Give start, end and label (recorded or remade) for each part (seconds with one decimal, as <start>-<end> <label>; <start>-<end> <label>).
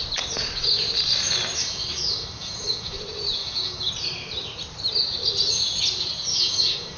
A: 0.0-1.6 recorded; 1.6-3.0 remade; 3.0-3.4 recorded; 3.4-3.9 remade; 3.9-6.3 recorded; 6.3-7.0 remade